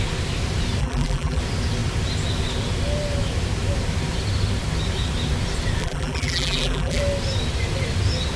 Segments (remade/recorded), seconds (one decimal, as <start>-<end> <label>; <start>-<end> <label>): 0.0-0.8 recorded; 0.8-1.4 remade; 1.4-5.8 recorded; 5.8-7.0 remade; 7.0-8.4 recorded